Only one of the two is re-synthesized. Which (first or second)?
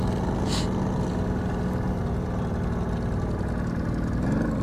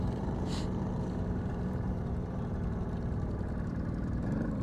second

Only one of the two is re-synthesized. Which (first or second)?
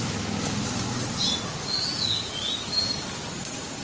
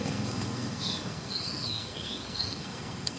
second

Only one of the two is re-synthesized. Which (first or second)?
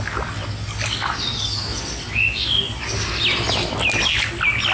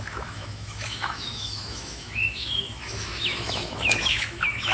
second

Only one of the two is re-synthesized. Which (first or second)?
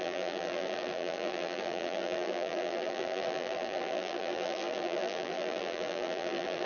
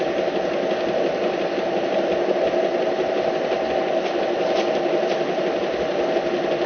first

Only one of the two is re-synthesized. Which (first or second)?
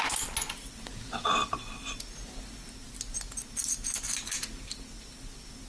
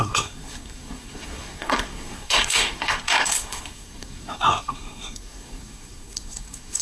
second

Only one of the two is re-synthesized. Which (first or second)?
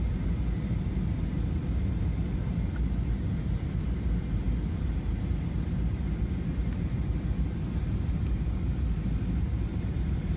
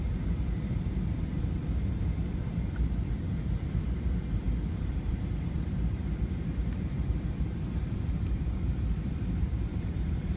second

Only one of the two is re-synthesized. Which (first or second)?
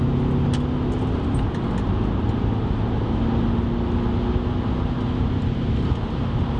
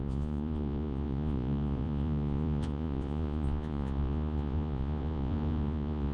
second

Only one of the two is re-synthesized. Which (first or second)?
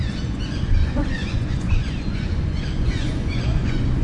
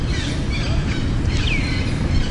first